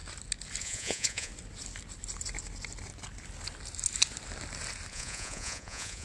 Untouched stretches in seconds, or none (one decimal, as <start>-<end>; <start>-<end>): 0.0-0.6; 1.3-4.9